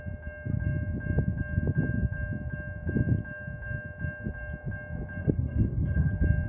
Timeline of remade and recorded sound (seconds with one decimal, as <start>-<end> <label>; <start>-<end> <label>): 0.0-5.2 recorded; 5.2-6.1 remade; 6.1-6.5 recorded